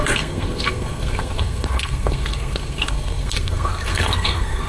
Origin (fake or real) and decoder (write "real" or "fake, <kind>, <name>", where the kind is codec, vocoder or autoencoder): fake, codec, SNAC